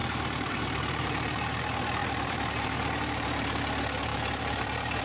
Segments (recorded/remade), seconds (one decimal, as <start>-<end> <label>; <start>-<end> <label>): 0.0-1.6 remade; 1.6-2.0 recorded; 2.0-3.6 remade; 3.6-4.1 recorded; 4.1-5.0 remade